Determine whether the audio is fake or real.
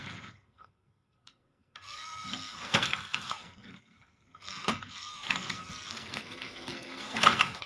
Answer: fake